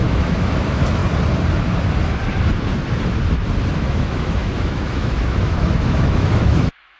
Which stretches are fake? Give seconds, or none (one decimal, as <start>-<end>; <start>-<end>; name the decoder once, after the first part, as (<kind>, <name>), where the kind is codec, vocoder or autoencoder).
0.0-1.0 (autoencoder, DAC-VAE); 3.8-7.0